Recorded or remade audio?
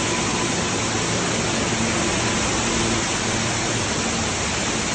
recorded